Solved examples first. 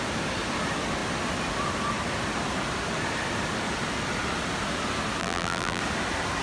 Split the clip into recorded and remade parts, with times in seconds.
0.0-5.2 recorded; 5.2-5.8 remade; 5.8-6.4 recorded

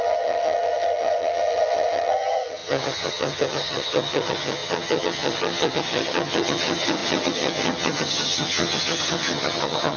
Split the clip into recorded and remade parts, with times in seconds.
0.0-10.0 remade

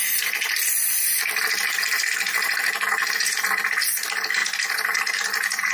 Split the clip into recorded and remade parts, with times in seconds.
0.0-5.7 remade

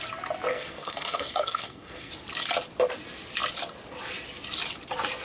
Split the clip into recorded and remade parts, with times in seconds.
0.0-0.5 recorded; 0.5-2.1 remade; 2.1-5.2 recorded